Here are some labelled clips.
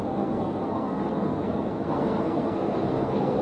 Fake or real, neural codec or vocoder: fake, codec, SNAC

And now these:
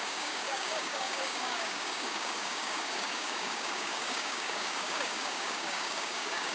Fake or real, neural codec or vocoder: fake, codec, DAC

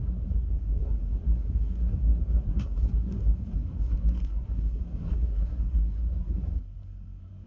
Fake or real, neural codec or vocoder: fake, codec, SNAC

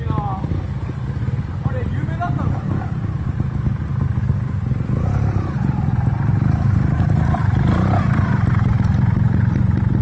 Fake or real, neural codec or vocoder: real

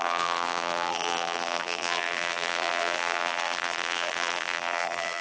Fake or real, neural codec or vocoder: fake, vocoder, BigVGAN v2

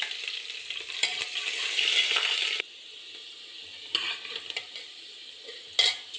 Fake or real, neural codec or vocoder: real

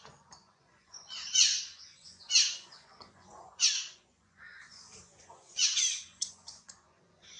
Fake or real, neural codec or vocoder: fake, vocoder, Vocos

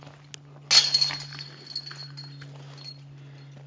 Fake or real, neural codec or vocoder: real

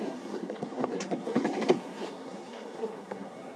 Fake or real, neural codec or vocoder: fake, codec, SNAC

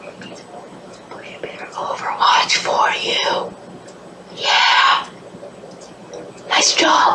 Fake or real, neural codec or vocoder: real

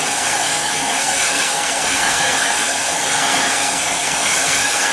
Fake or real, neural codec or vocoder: fake, codec, SNAC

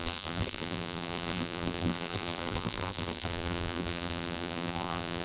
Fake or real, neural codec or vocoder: fake, vocoder, BigVGAN v2